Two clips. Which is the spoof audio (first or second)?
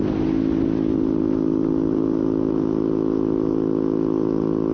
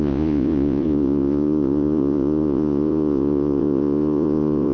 second